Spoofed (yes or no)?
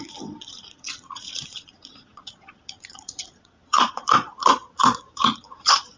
yes